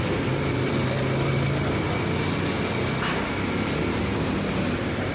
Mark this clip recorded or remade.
recorded